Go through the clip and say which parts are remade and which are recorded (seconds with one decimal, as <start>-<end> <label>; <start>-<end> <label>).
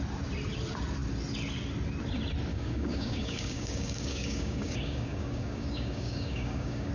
0.0-2.5 recorded; 2.5-6.9 remade